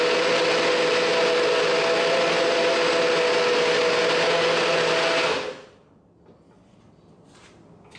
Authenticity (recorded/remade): recorded